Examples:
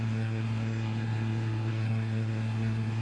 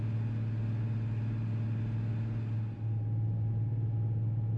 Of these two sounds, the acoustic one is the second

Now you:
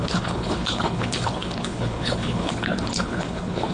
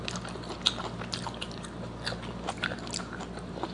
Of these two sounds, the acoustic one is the second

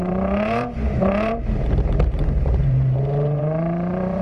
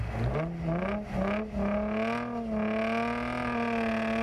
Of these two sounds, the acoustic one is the second